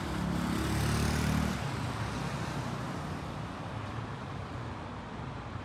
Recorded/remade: recorded